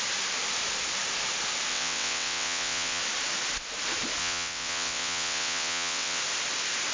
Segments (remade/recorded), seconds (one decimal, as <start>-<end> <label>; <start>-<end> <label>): 0.0-1.7 recorded; 1.7-3.0 remade; 3.0-4.2 recorded; 4.2-6.2 remade; 6.2-6.9 recorded